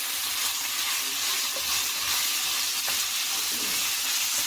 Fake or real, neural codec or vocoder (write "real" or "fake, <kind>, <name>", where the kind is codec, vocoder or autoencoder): real